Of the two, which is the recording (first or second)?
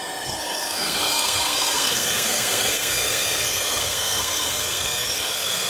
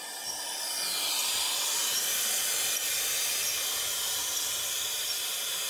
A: second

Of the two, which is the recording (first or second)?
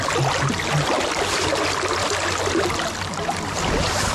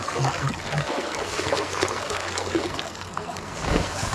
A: first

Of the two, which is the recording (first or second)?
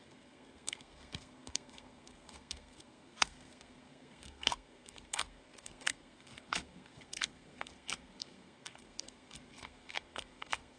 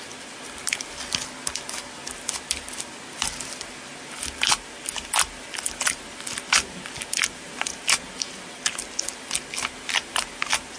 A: second